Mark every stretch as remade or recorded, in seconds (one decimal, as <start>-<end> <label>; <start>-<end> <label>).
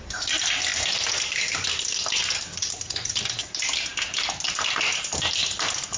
0.0-0.7 recorded; 0.7-3.2 remade; 3.2-6.0 recorded